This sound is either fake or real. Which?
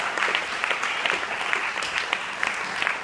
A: real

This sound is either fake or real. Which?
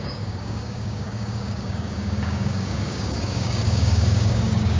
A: fake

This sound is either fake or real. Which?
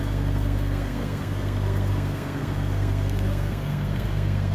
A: fake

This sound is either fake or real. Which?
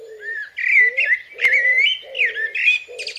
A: real